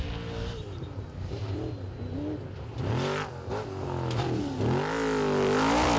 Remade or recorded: recorded